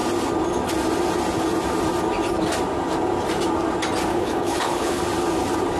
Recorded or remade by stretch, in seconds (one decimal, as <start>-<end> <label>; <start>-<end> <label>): 0.0-4.1 recorded; 4.1-5.0 remade; 5.0-5.8 recorded